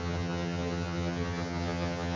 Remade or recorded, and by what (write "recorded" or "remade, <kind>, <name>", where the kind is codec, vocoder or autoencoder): remade, vocoder, HiFi-GAN